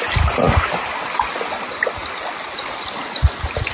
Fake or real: real